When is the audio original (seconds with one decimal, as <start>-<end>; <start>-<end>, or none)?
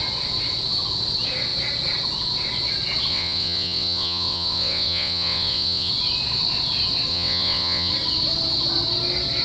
0.0-3.1; 5.9-7.1; 7.9-9.4